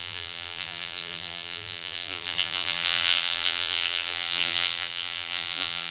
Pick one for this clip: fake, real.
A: fake